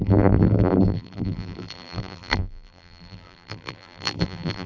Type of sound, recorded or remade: remade